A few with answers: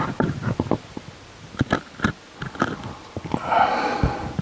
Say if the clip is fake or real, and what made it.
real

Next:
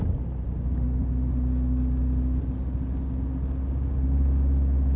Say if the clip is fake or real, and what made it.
real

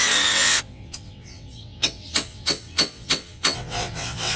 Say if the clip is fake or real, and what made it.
fake, vocoder, WaveNeXt